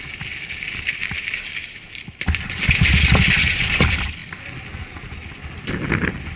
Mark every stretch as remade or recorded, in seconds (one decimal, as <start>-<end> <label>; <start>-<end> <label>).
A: 0.0-1.0 remade; 1.0-3.4 recorded; 3.4-4.2 remade; 4.2-6.0 recorded; 6.0-6.4 remade